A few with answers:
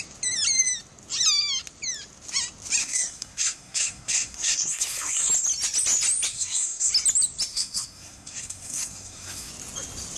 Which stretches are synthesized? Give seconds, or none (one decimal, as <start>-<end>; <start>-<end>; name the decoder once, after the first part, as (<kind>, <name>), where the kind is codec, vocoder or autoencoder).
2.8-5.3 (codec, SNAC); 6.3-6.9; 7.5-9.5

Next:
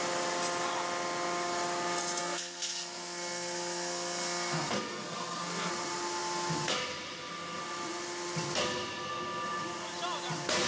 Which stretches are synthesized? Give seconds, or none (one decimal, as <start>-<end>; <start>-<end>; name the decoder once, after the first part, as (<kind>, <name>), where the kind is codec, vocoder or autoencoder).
2.2-5.7 (codec, SNAC)

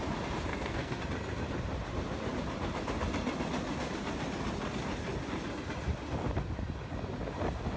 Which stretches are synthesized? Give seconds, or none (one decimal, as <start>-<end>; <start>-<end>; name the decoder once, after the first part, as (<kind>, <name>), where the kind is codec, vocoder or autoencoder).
0.5-1.0 (codec, SNAC)

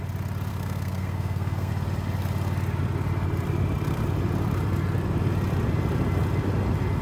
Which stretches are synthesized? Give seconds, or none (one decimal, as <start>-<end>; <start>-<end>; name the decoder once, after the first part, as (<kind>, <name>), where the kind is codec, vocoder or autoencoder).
0.5-1.7 (codec, SNAC)

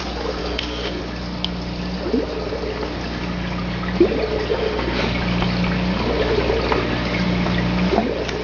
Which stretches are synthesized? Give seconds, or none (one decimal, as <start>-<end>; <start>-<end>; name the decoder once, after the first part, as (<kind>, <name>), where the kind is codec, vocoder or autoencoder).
0.4-1.0 (codec, SNAC); 4.5-5.0